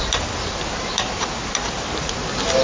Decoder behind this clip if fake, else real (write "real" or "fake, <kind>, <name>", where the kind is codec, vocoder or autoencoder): real